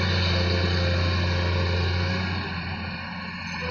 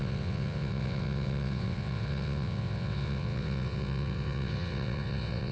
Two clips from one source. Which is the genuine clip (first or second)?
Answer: first